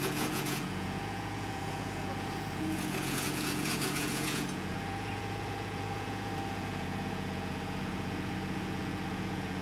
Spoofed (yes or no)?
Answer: yes